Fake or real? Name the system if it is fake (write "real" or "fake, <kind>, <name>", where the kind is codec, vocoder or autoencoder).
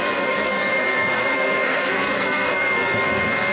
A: fake, codec, SNAC